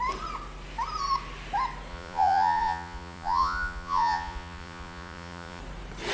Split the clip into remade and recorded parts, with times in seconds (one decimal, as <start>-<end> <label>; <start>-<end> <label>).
0.0-1.9 recorded; 1.9-5.6 remade; 5.6-6.1 recorded